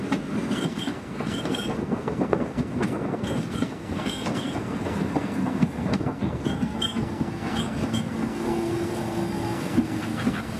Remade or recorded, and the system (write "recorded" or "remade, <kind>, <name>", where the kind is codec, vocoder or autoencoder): remade, codec, SNAC